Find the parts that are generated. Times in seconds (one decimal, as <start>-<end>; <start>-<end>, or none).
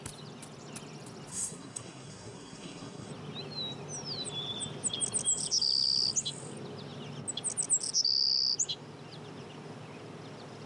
1.3-3.1